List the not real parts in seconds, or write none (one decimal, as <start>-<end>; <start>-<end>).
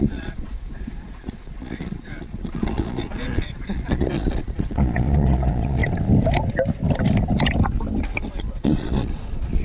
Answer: 0.0-5.8; 8.4-9.6